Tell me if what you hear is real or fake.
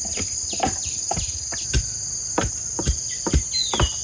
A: real